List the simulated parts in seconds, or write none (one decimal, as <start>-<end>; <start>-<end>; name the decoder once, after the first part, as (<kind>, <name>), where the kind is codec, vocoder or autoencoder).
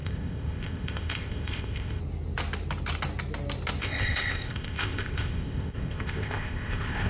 0.0-2.0 (codec, ZipCodec); 3.8-7.1